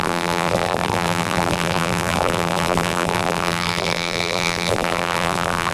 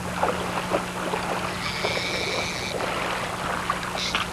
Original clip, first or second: second